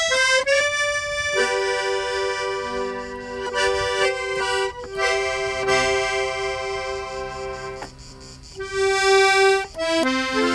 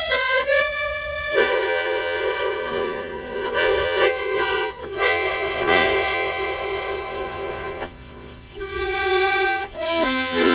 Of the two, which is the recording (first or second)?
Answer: first